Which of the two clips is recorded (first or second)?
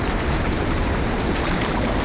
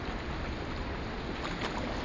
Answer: second